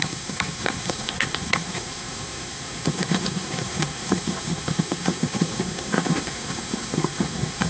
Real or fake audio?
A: fake